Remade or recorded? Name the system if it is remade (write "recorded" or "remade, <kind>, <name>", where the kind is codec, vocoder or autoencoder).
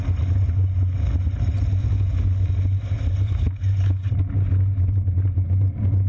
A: recorded